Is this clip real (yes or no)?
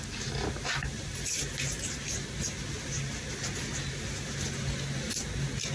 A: yes